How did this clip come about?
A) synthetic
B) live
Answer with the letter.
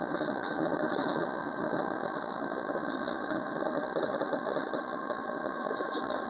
A